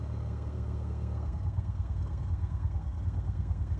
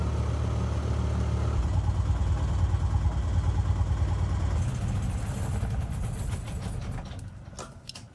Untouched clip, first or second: second